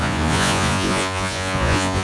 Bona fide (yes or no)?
no